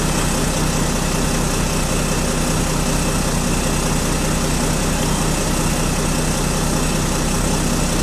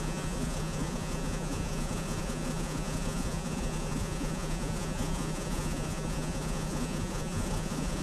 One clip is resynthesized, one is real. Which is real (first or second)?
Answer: first